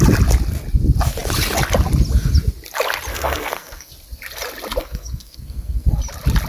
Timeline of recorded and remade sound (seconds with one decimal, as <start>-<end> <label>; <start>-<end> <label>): 0.0-3.1 recorded; 3.1-3.9 remade; 3.9-4.8 recorded; 4.8-6.0 remade; 6.0-6.5 recorded